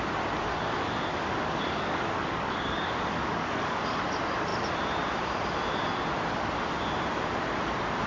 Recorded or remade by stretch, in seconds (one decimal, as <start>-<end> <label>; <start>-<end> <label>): 0.0-1.1 recorded; 1.1-4.0 remade; 4.0-8.1 recorded